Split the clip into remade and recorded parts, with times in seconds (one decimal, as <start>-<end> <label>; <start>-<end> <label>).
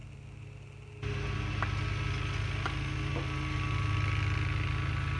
0.0-5.2 recorded